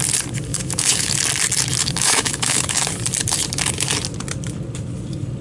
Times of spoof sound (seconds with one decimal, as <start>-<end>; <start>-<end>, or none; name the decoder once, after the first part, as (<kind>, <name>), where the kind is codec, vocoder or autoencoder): 0.5-1.1 (autoencoder, DAC-VAE); 1.8-2.8